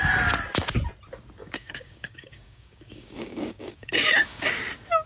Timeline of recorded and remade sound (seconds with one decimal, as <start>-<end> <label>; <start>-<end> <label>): 0.0-1.4 recorded; 1.4-4.5 remade; 4.5-5.1 recorded